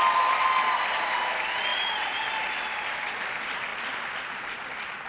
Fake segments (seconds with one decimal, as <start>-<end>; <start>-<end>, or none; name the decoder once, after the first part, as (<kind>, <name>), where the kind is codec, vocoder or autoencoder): 1.7-2.2 (vocoder, Vocos)